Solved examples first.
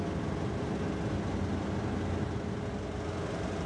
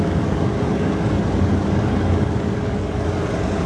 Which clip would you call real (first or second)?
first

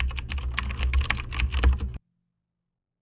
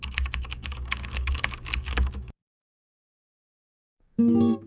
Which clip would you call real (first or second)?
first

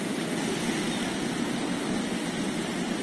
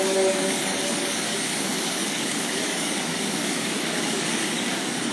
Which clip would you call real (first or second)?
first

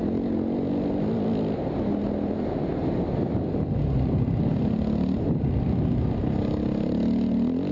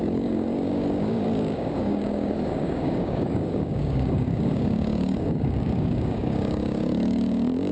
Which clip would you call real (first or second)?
first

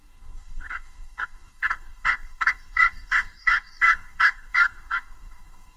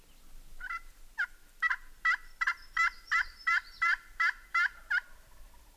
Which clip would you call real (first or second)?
second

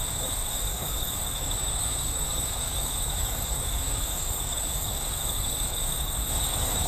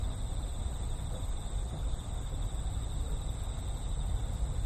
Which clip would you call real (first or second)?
second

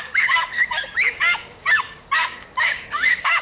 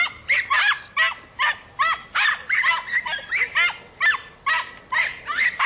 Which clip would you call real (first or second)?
second